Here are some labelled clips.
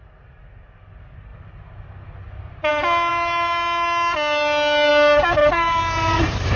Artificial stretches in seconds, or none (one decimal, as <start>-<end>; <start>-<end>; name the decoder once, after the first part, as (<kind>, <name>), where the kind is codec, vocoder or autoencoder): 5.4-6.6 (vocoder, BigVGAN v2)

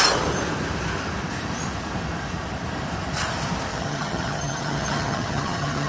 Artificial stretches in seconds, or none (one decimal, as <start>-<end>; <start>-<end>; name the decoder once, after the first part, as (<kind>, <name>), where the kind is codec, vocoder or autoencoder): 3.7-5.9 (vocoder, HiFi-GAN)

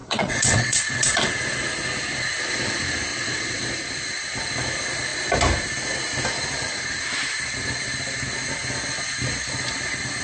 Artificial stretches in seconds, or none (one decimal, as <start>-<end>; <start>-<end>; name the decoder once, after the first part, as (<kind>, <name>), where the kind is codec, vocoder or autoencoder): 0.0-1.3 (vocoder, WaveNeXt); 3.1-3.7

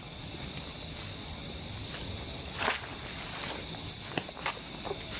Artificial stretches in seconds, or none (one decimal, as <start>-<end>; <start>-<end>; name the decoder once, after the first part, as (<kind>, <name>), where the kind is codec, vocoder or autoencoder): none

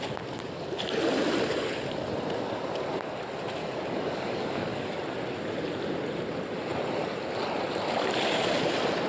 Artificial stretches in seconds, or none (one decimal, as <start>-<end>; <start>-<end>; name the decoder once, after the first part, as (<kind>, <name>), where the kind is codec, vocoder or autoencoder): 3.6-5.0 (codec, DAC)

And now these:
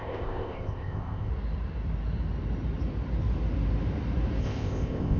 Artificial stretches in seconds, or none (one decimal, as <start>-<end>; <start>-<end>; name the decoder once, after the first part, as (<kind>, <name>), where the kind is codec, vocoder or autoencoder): 0.0-1.3 (codec, ZipCodec); 4.4-5.2

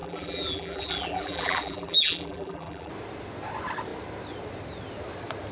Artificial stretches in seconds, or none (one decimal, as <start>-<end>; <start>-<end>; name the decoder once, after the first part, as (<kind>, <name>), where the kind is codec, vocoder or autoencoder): 0.0-2.9 (vocoder, BigVGAN v2)